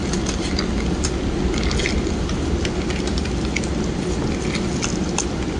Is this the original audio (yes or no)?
yes